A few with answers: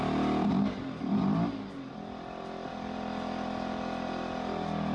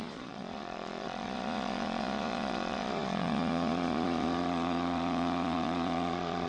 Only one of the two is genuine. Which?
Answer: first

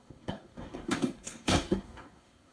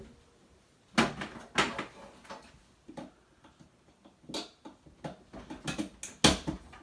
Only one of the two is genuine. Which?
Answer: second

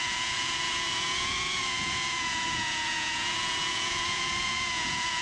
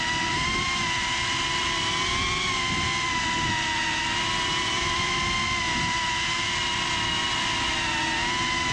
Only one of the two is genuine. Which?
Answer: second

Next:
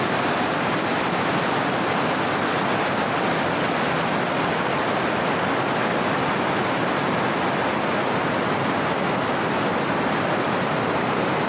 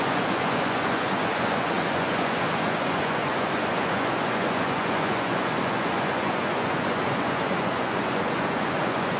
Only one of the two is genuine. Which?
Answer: first